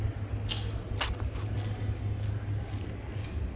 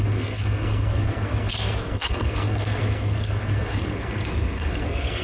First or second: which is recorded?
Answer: first